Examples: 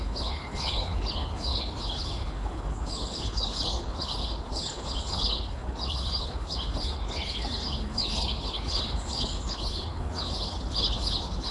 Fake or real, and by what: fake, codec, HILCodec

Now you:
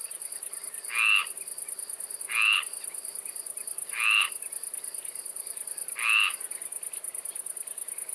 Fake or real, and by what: real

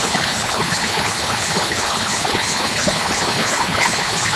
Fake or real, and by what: fake, codec, HILCodec